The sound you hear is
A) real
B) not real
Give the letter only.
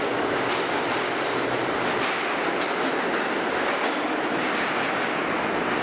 A